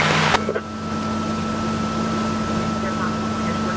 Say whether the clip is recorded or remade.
recorded